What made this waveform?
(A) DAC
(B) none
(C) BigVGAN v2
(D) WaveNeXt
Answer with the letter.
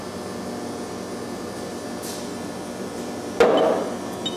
B